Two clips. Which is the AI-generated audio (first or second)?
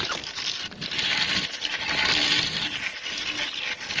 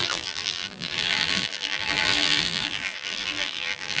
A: second